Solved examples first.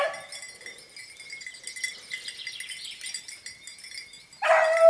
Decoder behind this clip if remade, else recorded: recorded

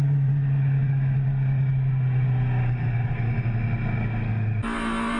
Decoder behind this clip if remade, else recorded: recorded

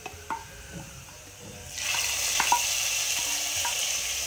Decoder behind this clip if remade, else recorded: remade, vocoder, BigVGAN v2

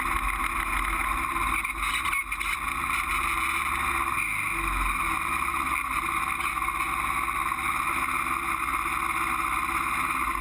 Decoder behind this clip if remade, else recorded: recorded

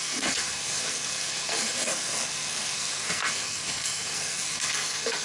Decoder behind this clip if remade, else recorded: remade, codec, SNAC